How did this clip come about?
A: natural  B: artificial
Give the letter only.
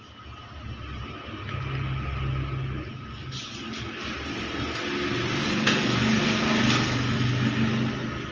A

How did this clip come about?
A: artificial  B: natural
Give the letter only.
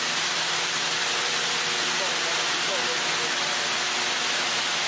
B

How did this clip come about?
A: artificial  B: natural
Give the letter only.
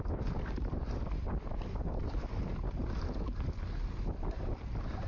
B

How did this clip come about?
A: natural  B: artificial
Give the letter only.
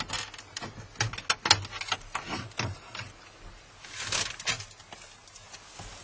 A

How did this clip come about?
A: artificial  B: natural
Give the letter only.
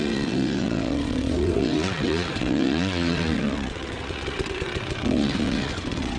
A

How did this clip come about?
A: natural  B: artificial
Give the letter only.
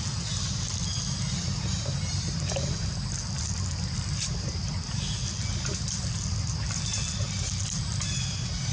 A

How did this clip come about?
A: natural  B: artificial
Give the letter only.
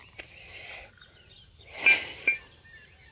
A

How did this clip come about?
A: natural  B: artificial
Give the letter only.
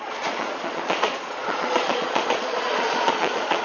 B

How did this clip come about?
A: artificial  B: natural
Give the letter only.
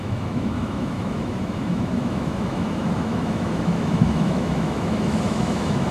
A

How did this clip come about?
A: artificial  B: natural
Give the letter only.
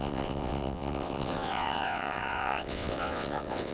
A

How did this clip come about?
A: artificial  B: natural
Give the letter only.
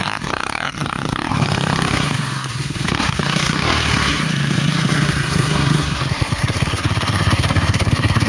A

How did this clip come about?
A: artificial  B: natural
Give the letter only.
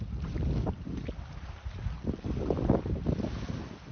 B